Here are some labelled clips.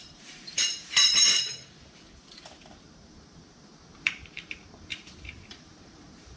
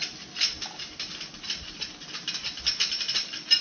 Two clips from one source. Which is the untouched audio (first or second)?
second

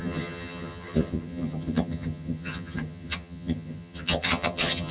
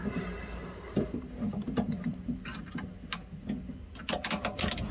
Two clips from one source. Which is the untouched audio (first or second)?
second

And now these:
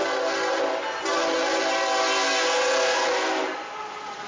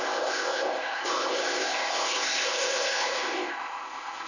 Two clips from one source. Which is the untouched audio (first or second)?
first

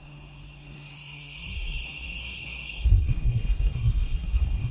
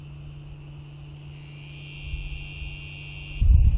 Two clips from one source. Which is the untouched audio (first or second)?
second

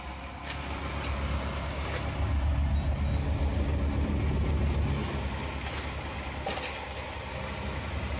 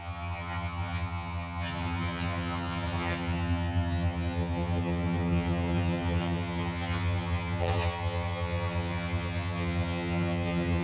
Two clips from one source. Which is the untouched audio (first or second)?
first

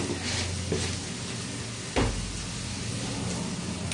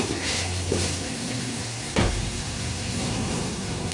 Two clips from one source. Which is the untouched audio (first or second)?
first